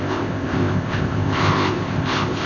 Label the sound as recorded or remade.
remade